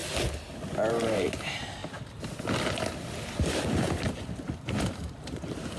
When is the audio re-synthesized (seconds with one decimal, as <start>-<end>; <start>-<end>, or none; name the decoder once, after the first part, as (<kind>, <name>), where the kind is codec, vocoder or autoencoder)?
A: 0.9-1.8 (vocoder, BigVGAN v2); 4.6-5.8